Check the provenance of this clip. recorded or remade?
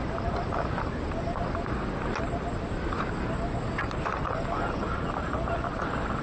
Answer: recorded